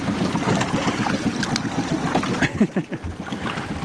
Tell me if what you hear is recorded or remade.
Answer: recorded